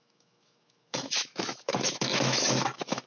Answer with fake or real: fake